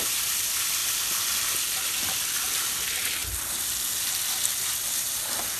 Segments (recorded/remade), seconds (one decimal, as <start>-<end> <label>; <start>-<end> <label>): 0.0-5.6 recorded